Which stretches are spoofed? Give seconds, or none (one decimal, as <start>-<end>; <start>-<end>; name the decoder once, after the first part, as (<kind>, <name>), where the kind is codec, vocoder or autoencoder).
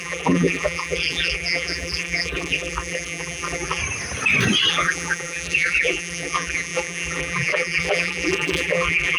0.0-3.8 (vocoder, BigVGAN v2); 4.7-9.2